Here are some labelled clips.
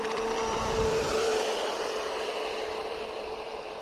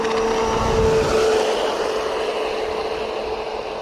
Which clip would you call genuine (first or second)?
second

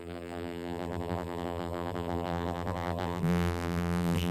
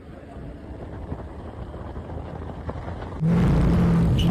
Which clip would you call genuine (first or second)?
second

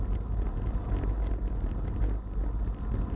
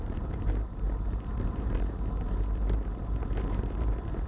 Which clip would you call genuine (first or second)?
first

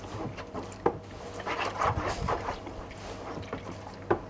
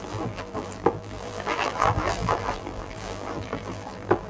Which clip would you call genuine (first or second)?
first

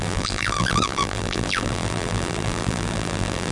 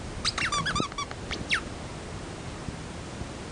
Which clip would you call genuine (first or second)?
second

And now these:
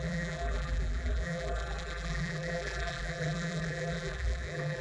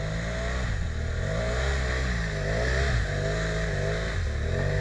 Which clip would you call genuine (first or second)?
second